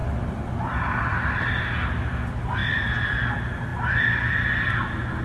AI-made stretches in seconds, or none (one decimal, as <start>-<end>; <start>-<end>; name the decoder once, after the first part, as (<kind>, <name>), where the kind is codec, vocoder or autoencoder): 0.0-1.5 (vocoder, BigVGAN v2); 2.6-3.3